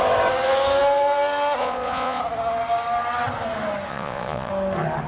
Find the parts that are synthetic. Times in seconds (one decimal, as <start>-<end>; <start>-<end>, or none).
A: 1.6-2.2; 3.9-4.5